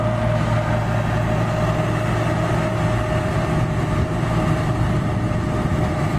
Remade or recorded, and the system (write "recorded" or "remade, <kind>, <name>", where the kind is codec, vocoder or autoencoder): recorded